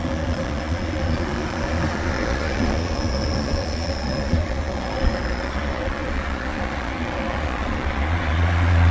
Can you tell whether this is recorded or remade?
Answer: remade